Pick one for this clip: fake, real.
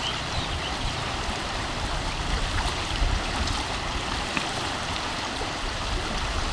fake